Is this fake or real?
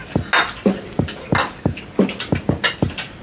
real